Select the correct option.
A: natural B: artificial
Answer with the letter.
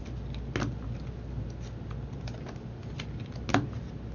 A